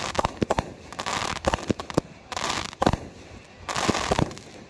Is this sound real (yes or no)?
yes